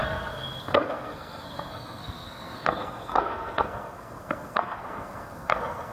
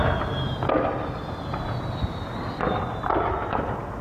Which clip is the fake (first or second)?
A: first